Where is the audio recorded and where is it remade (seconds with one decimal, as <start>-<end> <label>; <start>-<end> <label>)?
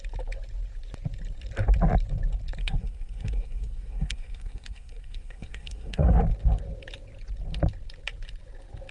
0.0-2.6 recorded; 2.6-6.2 remade; 6.2-8.9 recorded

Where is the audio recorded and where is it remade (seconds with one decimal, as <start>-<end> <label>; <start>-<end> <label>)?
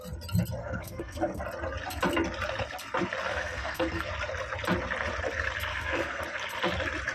0.0-0.6 recorded; 0.6-1.4 remade; 1.4-3.3 recorded; 3.3-4.1 remade; 4.1-5.7 recorded; 5.7-6.2 remade; 6.2-7.1 recorded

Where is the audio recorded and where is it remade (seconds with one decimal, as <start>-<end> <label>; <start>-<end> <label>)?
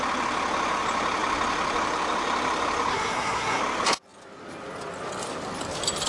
0.0-2.9 recorded; 2.9-3.6 remade; 3.6-6.1 recorded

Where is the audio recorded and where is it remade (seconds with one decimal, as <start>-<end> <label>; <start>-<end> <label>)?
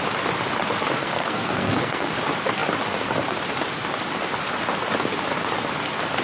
0.0-1.0 recorded; 1.0-2.1 remade; 2.1-6.2 recorded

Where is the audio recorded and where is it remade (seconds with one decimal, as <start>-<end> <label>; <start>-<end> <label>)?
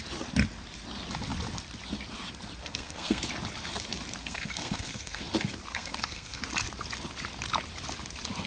0.0-2.6 recorded; 2.6-3.2 remade; 3.2-4.2 recorded; 4.2-5.2 remade; 5.2-5.7 recorded; 5.7-6.4 remade; 6.4-8.5 recorded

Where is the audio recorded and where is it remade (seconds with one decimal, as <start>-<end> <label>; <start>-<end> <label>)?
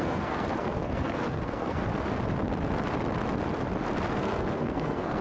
0.0-1.8 remade; 1.8-4.1 recorded; 4.1-5.2 remade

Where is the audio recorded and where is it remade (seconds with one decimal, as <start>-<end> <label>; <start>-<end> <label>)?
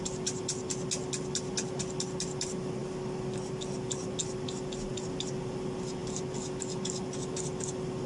0.0-8.1 recorded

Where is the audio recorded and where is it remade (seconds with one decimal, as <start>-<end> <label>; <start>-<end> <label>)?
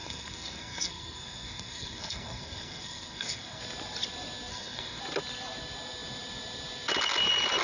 0.0-3.6 remade; 3.6-4.5 recorded; 4.5-5.0 remade; 5.0-7.6 recorded